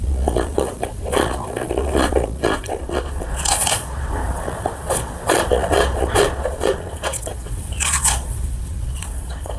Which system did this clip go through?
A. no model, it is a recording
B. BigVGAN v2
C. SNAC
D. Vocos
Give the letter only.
D